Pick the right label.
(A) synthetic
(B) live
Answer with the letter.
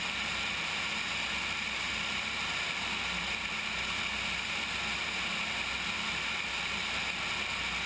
B